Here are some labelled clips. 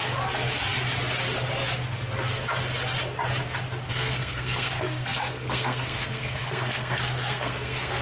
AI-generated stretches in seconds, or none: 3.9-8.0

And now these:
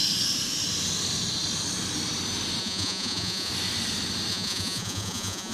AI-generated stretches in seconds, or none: 2.6-3.5; 4.3-5.5

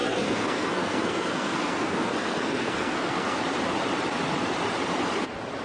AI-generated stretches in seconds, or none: 0.0-3.4

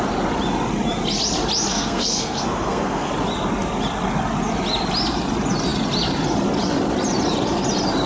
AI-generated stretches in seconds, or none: 1.7-3.1

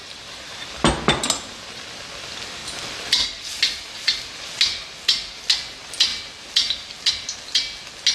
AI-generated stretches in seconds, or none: 0.0-0.7

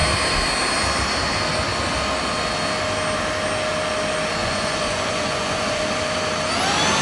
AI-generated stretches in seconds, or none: 4.4-5.8